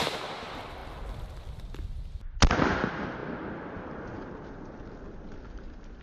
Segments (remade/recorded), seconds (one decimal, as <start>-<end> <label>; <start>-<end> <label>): 0.0-6.0 recorded

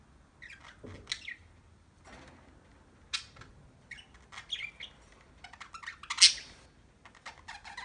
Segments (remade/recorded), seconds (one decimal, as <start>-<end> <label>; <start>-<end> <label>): 0.0-7.8 recorded

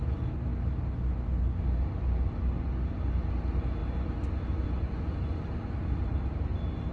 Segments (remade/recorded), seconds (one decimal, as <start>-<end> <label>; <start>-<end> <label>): 0.0-6.9 recorded

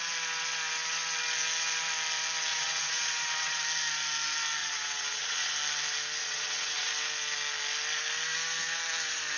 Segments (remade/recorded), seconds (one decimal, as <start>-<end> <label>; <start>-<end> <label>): 0.0-2.5 recorded; 2.5-3.6 remade; 3.6-4.6 recorded; 4.6-5.5 remade; 5.5-6.2 recorded; 6.2-6.9 remade; 6.9-9.4 recorded

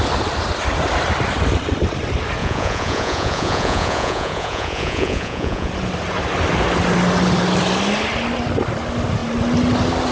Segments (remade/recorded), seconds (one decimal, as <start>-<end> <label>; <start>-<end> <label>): 0.0-2.4 recorded; 2.4-5.7 remade; 5.7-10.1 recorded